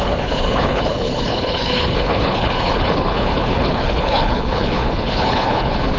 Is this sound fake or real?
fake